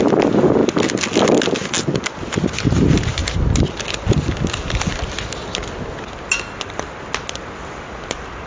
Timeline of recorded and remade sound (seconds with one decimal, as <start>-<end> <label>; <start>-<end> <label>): 0.0-8.5 recorded